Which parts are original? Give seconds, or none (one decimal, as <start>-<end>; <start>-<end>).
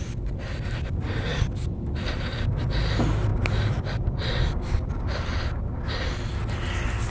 0.0-1.3; 2.6-7.1